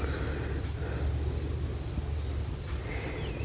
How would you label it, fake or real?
real